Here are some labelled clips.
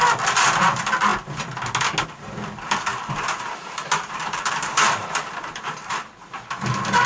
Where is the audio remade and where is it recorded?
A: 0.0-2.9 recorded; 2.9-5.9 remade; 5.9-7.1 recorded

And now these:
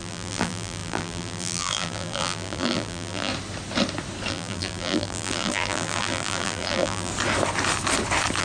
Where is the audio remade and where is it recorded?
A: 0.0-3.3 remade; 3.3-4.3 recorded; 4.3-7.1 remade; 7.1-8.4 recorded

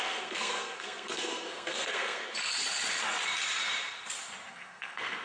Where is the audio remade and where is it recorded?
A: 0.0-2.2 remade; 2.2-4.5 recorded; 4.5-5.2 remade

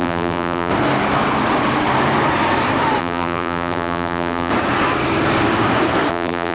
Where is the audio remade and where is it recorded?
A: 0.0-0.7 remade; 0.7-3.0 recorded; 3.0-4.5 remade; 4.5-6.1 recorded; 6.1-6.5 remade

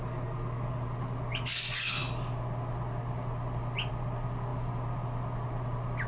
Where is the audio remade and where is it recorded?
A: 0.0-6.1 recorded

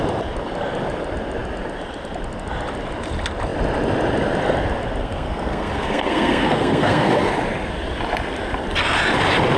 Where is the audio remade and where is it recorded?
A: 0.0-5.0 recorded; 5.0-7.3 remade; 7.3-9.6 recorded

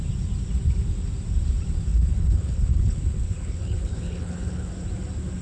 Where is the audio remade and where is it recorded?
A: 0.0-1.9 recorded; 1.9-4.7 remade; 4.7-5.4 recorded